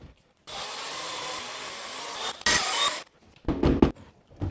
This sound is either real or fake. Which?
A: real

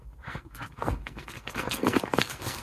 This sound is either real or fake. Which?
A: fake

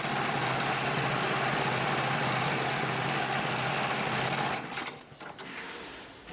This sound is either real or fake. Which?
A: real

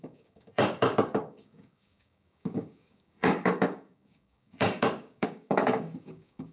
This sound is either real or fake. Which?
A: fake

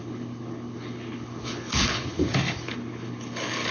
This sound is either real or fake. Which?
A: fake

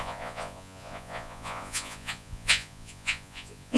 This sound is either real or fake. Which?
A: fake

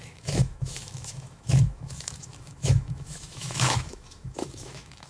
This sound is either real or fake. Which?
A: fake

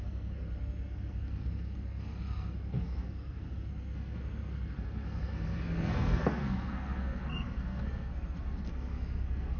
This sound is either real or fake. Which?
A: fake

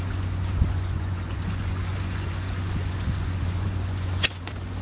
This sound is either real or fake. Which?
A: fake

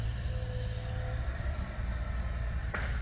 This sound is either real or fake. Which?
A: real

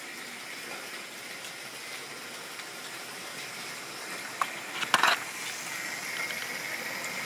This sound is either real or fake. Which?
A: real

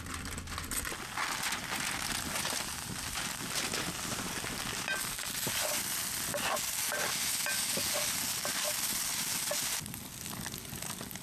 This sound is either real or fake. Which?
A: real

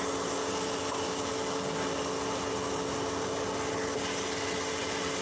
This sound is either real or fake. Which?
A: real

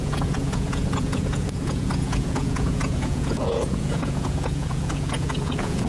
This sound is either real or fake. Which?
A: fake